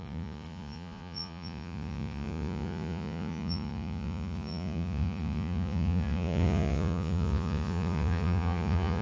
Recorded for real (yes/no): no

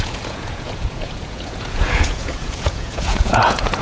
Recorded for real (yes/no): no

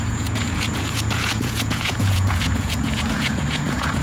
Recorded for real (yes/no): no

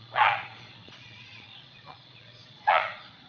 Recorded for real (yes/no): no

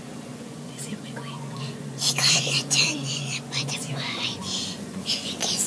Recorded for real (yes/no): no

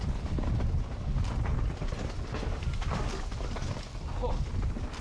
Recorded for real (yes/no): yes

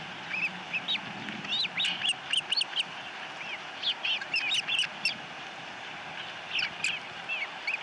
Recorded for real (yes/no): yes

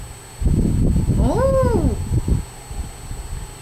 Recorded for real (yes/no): yes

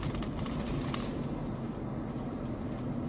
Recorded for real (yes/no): yes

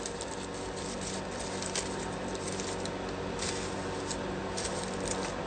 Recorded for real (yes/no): yes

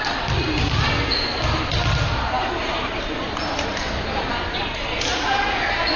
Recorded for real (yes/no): yes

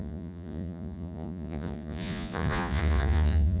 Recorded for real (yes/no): no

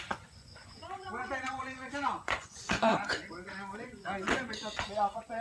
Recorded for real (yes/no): no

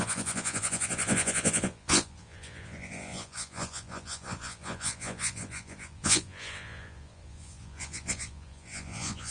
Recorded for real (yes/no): no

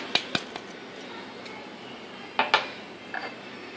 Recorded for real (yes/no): yes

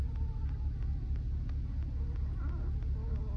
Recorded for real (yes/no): yes